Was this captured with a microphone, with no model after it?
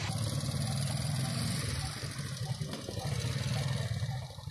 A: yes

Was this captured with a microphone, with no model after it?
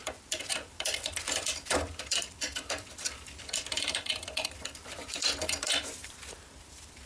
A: no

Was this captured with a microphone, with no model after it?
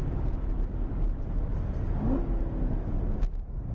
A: yes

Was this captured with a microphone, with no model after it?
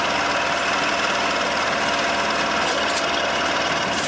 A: yes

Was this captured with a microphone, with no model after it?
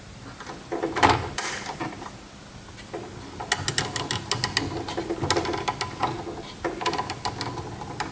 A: yes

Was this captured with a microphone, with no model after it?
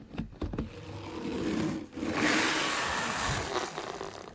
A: yes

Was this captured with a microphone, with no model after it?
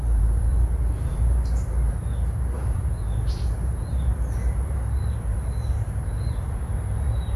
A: no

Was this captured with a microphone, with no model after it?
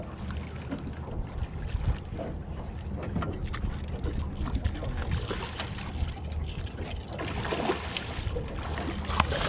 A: yes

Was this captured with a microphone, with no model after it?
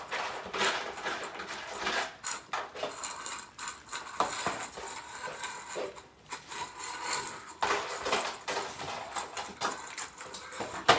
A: yes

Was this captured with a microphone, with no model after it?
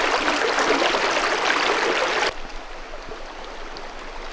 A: yes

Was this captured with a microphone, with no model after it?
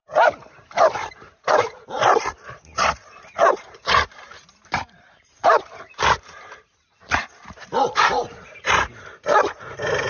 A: no